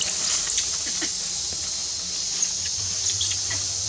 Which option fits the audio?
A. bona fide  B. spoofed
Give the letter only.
A